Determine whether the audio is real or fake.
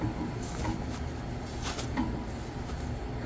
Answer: real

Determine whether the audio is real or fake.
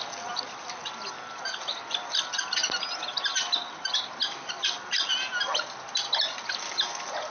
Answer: real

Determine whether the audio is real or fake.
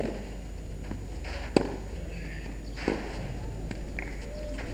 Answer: real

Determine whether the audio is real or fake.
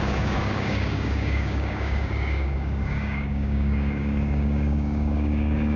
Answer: fake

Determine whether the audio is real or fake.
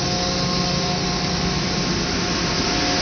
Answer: real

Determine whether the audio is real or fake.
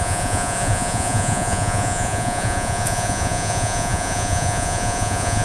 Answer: fake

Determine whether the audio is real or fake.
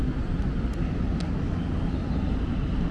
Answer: real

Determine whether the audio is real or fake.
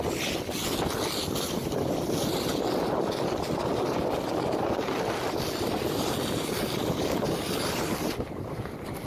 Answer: real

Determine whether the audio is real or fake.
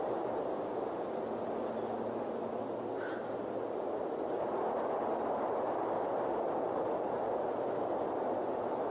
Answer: real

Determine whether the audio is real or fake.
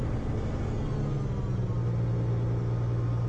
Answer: real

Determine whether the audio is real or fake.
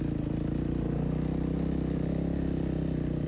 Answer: real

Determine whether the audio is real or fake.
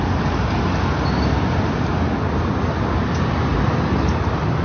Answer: real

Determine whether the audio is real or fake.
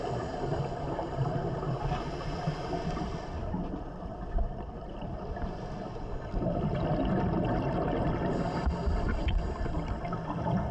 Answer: real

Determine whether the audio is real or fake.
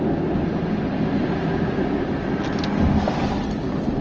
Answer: real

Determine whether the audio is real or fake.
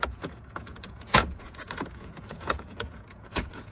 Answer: fake